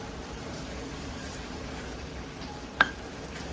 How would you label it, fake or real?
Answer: fake